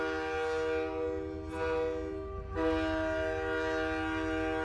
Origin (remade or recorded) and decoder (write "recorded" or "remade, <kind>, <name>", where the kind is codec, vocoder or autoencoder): recorded